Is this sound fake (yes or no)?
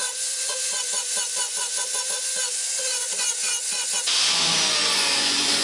yes